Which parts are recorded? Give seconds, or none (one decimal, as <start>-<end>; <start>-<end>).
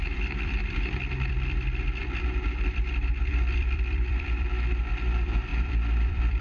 none